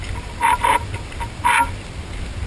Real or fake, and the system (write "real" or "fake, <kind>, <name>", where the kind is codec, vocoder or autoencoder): real